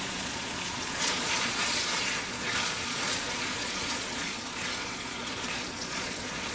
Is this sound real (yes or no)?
no